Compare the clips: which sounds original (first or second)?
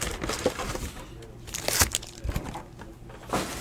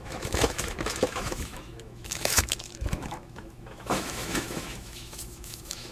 first